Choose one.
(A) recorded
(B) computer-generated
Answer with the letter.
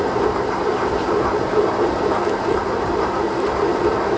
B